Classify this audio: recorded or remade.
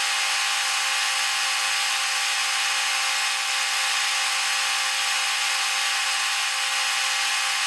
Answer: recorded